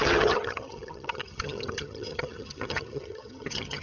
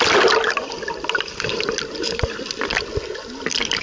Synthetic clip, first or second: first